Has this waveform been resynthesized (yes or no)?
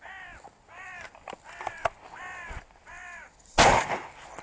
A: no